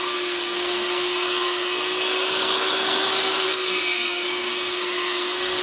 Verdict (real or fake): fake